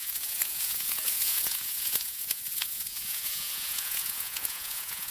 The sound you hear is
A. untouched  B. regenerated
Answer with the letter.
B